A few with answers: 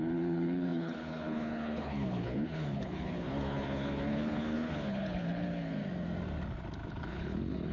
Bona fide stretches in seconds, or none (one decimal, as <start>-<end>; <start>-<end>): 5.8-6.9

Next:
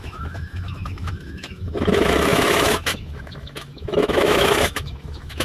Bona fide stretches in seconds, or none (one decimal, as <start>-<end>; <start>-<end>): none

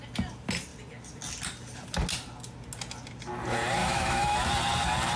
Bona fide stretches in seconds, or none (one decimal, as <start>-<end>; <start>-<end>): 0.0-3.8; 4.5-5.2